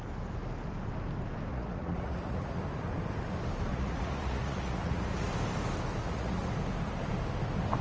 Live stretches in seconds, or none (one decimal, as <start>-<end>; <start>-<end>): 0.0-1.5; 2.6-3.7; 5.3-6.0; 6.5-7.8